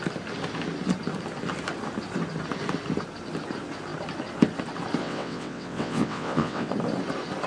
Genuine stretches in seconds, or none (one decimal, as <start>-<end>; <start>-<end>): 0.0-5.0; 6.7-7.5